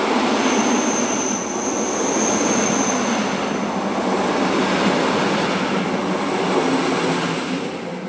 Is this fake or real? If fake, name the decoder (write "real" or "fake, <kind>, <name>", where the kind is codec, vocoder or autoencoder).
real